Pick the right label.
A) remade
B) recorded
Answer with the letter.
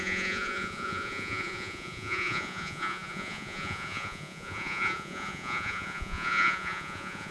A